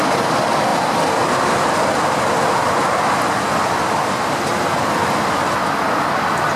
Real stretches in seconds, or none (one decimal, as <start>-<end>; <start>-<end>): 0.0-0.7; 2.2-6.6